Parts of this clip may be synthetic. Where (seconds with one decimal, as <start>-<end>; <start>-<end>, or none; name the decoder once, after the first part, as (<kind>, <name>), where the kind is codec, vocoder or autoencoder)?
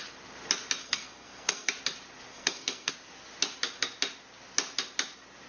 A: 0.8-1.7 (codec, SNAC); 2.3-2.9